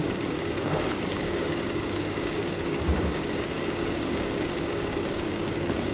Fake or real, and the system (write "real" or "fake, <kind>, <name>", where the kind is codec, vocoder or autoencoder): fake, codec, DAC